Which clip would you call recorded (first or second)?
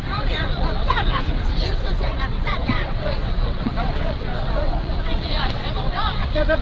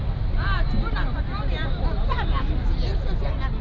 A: second